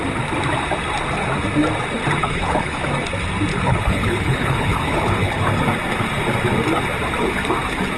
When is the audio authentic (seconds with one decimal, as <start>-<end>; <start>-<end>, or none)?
0.0-2.2; 2.8-3.5; 5.4-8.0